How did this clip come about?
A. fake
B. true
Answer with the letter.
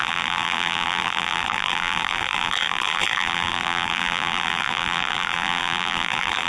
A